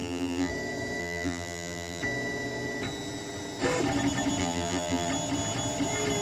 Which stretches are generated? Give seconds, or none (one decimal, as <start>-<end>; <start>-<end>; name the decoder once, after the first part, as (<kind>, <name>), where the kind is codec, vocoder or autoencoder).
0.0-0.5 (vocoder, BigVGAN v2); 1.0-2.0; 4.4-5.1